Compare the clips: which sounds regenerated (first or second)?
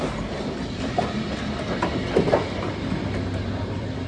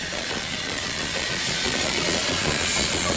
second